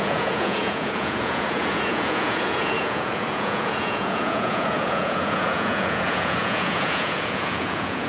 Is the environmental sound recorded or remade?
remade